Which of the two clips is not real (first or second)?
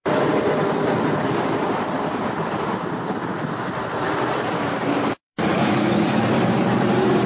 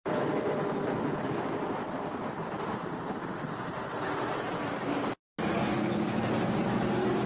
first